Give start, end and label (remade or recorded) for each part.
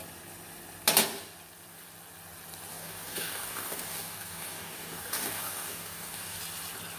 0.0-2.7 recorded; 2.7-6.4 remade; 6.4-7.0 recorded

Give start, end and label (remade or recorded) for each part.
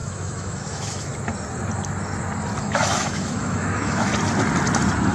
0.0-1.1 remade; 1.1-2.6 recorded; 2.6-4.1 remade; 4.1-5.1 recorded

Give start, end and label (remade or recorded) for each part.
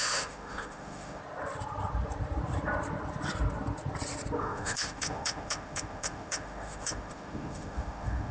0.0-1.2 remade; 1.2-4.4 recorded; 4.4-8.3 remade